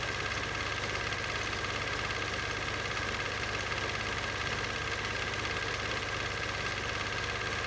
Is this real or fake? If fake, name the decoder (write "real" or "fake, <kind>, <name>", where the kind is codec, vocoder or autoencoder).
real